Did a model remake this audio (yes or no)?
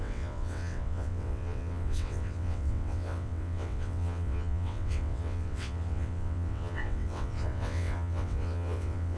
yes